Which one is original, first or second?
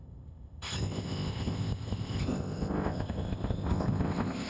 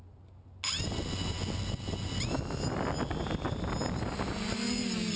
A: second